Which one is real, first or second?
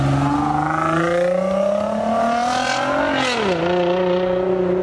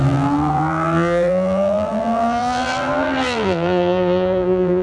first